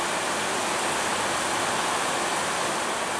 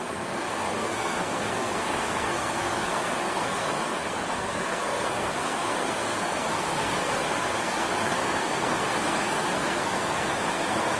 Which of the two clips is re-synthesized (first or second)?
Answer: second